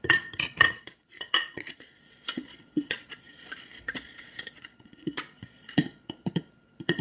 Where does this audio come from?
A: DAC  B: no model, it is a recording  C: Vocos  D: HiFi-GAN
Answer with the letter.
C